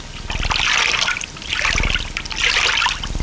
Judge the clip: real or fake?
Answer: real